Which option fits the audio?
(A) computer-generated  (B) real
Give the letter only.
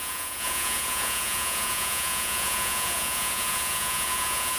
A